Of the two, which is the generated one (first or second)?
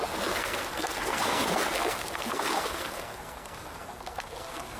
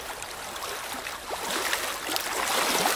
first